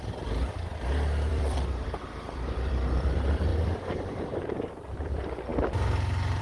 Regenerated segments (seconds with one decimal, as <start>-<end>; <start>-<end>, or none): 0.0-0.7; 1.3-5.5